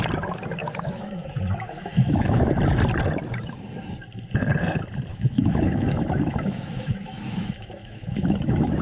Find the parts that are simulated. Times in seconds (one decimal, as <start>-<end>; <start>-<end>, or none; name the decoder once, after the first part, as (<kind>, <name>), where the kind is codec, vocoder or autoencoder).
0.6-2.5 (autoencoder, DAC-VAE); 5.1-8.8